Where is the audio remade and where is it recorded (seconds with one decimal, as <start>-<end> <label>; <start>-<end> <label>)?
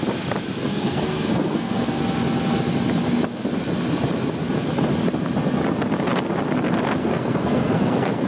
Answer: 0.0-0.7 recorded; 0.7-2.0 remade; 2.0-7.0 recorded; 7.0-8.3 remade